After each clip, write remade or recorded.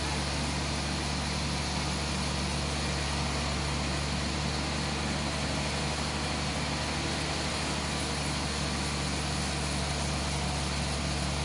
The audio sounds recorded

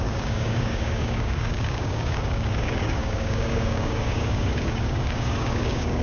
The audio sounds remade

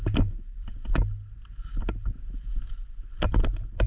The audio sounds recorded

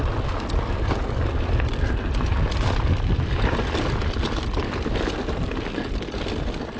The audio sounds recorded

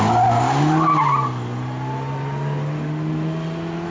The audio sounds recorded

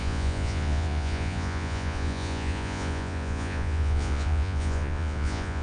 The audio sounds remade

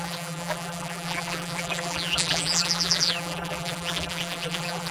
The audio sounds remade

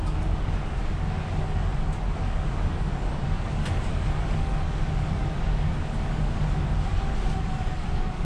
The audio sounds remade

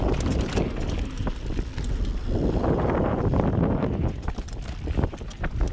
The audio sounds recorded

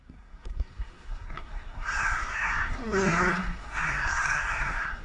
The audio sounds remade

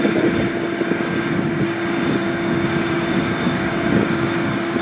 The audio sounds remade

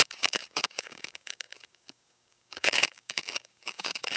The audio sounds remade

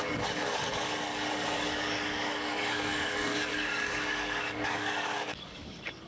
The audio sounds remade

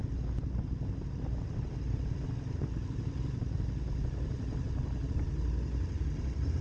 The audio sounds recorded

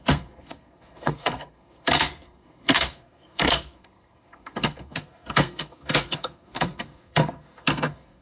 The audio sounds remade